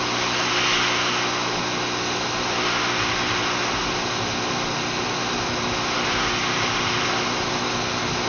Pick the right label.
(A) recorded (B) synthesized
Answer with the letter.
A